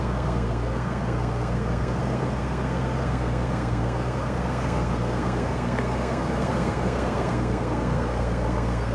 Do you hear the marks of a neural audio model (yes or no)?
yes